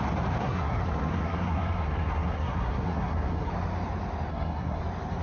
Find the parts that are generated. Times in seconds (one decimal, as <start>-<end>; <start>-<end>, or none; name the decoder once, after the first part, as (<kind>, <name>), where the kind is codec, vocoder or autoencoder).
0.4-3.5 (codec, SNAC); 4.3-4.8